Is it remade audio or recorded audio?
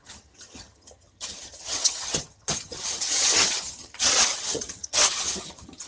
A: remade